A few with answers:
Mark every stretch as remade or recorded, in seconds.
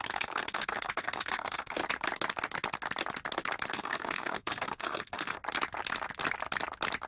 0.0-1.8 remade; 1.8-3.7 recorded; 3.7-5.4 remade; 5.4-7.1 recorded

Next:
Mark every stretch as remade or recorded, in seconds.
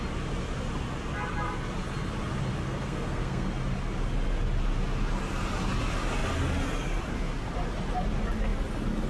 0.0-2.6 recorded; 2.6-3.5 remade; 3.5-9.1 recorded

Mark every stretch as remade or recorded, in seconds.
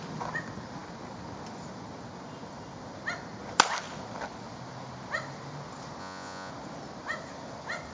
0.0-6.0 recorded; 6.0-6.5 remade; 6.5-7.9 recorded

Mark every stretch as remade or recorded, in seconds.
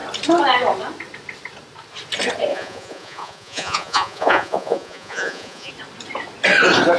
0.0-2.5 recorded; 2.5-5.7 remade; 5.7-7.0 recorded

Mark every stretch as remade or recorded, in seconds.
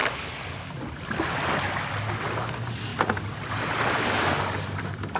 0.0-5.2 recorded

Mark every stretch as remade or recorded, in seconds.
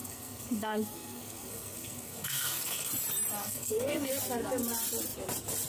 0.0-2.9 remade; 2.9-3.4 recorded; 3.4-4.1 remade; 4.1-5.7 recorded